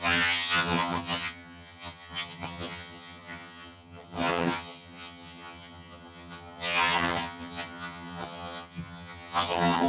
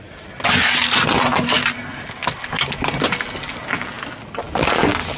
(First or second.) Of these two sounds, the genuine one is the second